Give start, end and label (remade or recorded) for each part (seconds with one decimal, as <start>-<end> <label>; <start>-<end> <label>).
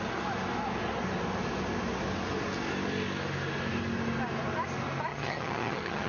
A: 0.0-5.1 recorded; 5.1-6.1 remade